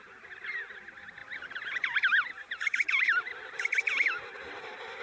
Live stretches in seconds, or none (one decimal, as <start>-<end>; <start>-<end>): 0.0-1.2; 4.2-5.0